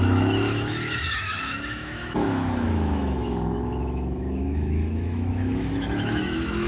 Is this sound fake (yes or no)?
yes